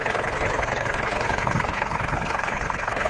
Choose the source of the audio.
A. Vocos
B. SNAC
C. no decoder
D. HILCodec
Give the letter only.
D